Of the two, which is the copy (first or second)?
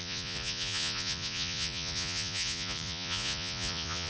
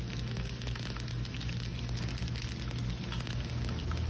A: first